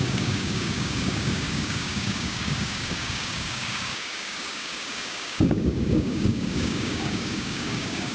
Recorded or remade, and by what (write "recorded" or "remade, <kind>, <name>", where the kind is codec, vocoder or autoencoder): remade, codec, DAC